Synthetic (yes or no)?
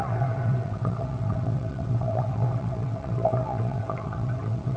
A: yes